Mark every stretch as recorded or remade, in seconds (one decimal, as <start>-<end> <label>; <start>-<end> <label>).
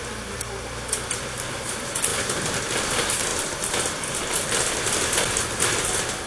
0.0-6.3 recorded